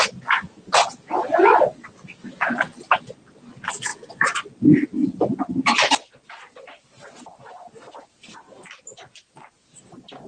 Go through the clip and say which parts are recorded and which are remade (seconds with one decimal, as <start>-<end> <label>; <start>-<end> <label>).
0.0-10.3 recorded